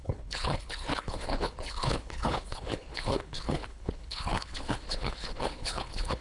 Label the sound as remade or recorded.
remade